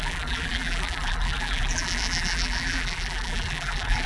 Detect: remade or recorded remade